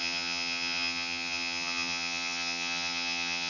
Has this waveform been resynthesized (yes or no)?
yes